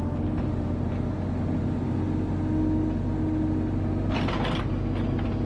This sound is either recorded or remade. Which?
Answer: recorded